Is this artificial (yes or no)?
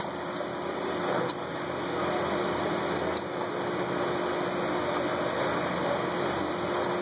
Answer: no